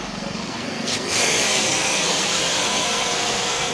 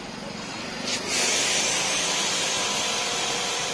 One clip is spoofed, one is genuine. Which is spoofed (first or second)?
first